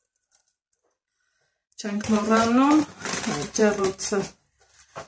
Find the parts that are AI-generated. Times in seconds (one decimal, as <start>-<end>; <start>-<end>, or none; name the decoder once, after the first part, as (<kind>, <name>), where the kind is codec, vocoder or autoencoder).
1.6-3.0 (vocoder, BigVGAN v2); 3.6-4.6

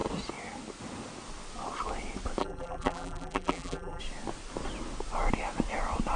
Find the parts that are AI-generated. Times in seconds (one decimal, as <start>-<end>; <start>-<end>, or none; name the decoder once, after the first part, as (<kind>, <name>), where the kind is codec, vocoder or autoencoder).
2.4-4.0 (vocoder, BigVGAN v2)

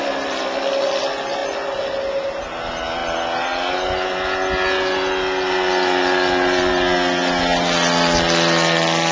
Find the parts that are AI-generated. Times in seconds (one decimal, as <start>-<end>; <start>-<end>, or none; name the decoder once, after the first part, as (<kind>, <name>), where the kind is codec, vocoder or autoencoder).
none

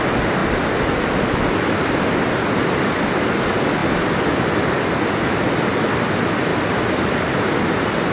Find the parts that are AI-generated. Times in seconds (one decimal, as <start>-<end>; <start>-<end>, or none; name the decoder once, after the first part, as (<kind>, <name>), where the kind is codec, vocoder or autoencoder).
0.4-1.0 (vocoder, BigVGAN v2); 6.5-7.5

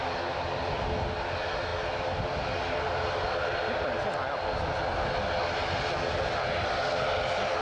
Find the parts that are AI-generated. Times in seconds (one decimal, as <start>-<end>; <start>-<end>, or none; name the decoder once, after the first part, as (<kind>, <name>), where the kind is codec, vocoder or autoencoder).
none

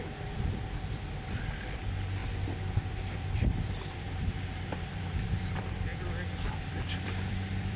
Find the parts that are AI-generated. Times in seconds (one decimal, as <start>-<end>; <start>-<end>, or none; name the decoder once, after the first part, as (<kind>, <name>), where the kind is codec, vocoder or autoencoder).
0.0-2.2 (vocoder, BigVGAN v2); 2.9-7.8